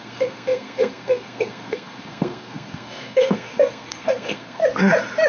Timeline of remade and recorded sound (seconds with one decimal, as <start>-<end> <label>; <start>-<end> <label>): 0.0-4.6 remade; 4.6-5.3 recorded